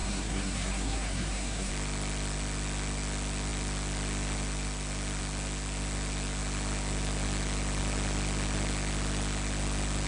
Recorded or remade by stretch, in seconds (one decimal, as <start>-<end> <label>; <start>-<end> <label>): 0.0-1.7 remade; 1.7-10.1 recorded